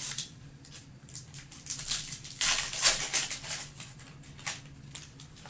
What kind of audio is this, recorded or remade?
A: remade